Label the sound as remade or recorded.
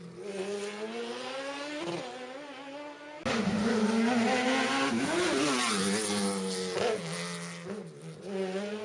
recorded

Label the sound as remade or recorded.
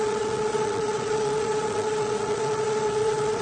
remade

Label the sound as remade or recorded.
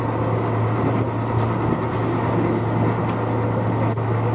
recorded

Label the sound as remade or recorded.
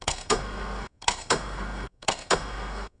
remade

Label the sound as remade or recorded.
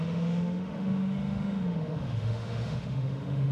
remade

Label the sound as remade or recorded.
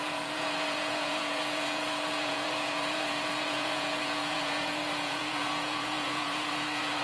remade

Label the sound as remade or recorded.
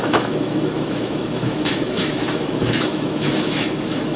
remade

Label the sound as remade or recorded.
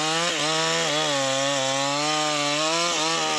recorded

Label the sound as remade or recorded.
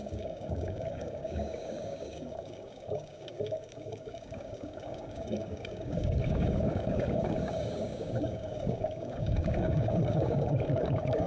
remade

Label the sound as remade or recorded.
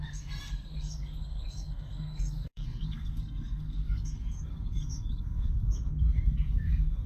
remade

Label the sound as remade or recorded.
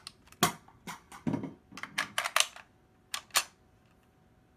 recorded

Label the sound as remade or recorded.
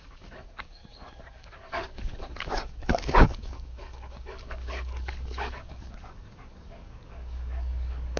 remade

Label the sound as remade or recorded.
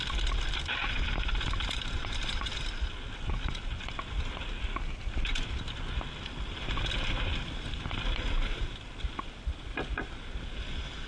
recorded